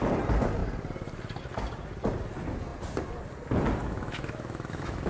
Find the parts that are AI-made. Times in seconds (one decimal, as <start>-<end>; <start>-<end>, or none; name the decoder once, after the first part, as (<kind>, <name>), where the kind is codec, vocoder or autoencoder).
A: 3.8-5.1 (autoencoder, DAC-VAE)